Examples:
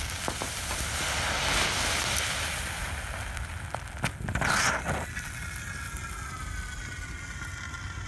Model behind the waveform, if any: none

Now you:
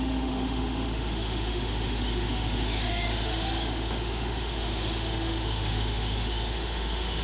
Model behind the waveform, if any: autoencoder, DAC-VAE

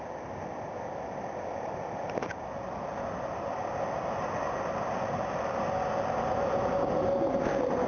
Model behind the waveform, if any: none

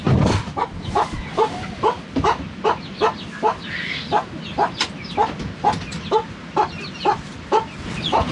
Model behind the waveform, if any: vocoder, BigVGAN v2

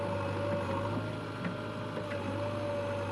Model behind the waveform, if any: none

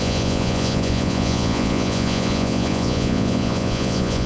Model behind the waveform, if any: vocoder, Vocos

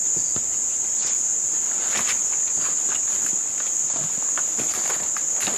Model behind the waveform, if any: none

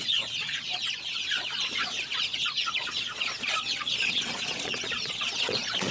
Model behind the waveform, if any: vocoder, Vocos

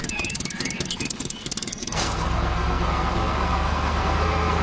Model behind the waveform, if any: codec, SNAC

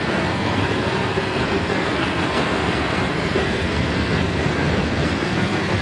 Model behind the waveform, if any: codec, SNAC